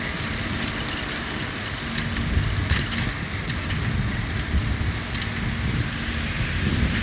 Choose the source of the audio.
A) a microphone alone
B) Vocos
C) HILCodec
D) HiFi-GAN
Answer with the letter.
A